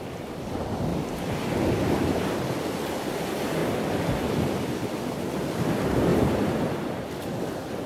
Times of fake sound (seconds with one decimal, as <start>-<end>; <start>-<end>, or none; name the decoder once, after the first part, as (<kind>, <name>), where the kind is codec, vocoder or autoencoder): 0.9-2.6 (vocoder, BigVGAN v2); 3.6-4.5